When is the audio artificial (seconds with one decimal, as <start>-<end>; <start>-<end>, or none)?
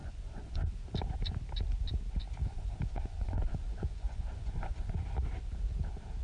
0.0-0.7; 2.4-4.9